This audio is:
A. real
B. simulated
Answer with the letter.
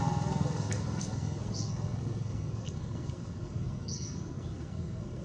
B